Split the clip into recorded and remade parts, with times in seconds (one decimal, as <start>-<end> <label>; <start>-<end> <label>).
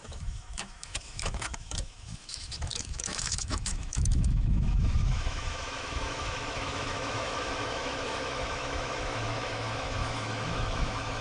0.0-11.2 remade